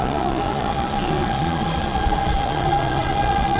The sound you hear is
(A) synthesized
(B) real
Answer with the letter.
A